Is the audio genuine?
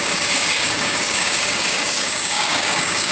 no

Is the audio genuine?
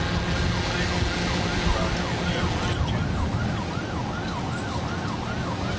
yes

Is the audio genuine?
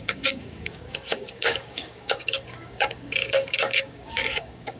no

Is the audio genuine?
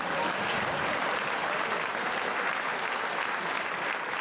yes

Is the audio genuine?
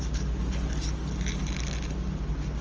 yes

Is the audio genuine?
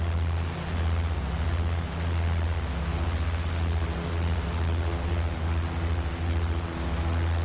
yes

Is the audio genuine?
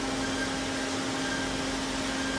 yes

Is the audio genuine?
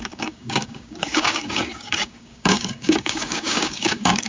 no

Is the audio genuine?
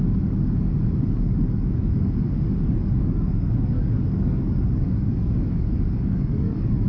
no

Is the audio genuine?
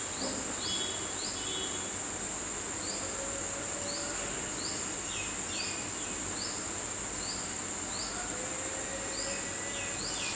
yes